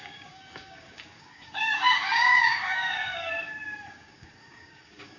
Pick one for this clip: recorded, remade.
remade